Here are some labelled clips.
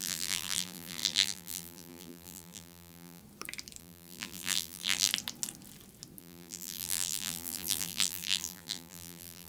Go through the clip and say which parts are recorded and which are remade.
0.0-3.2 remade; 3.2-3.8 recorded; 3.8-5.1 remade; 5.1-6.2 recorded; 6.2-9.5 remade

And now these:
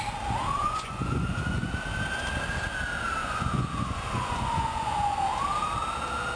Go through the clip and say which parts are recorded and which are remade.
0.0-0.6 recorded; 0.6-1.7 remade; 1.7-3.2 recorded; 3.2-5.2 remade; 5.2-6.4 recorded

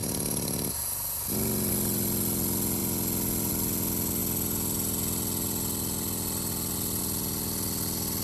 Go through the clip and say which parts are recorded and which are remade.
0.0-8.2 recorded

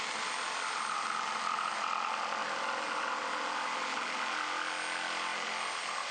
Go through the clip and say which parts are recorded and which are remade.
0.0-6.1 recorded

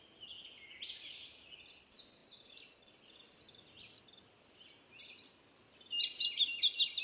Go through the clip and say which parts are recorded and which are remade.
0.0-7.0 recorded

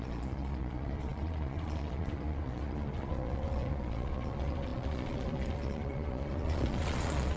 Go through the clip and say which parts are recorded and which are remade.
0.0-7.4 remade

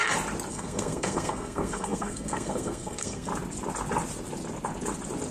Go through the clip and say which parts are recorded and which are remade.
0.0-0.5 recorded; 0.5-3.3 remade; 3.3-5.3 recorded